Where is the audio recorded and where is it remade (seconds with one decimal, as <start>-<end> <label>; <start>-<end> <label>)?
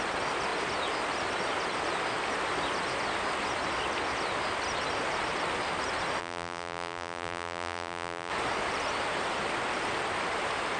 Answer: 0.0-6.2 recorded; 6.2-8.3 remade; 8.3-10.8 recorded